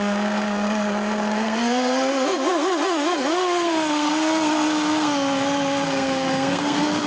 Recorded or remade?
remade